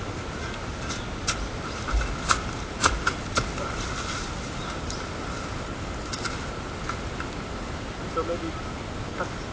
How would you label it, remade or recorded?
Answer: recorded